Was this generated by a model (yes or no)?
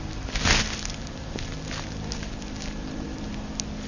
no